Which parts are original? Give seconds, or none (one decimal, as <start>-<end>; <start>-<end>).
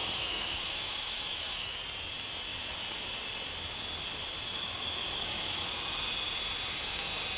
1.8-4.5; 5.8-7.4